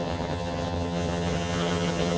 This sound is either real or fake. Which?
fake